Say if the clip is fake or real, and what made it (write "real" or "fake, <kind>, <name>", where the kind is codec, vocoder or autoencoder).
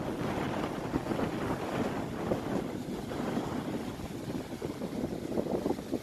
real